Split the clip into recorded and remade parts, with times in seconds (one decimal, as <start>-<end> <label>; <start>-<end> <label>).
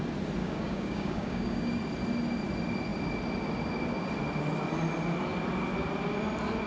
0.0-0.4 recorded; 0.4-1.8 remade; 1.8-6.7 recorded